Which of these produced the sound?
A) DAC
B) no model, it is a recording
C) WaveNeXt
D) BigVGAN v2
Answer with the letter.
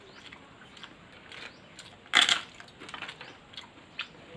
B